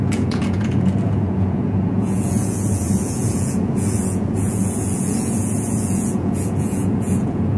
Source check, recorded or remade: remade